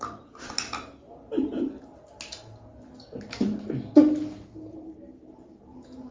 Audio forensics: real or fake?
real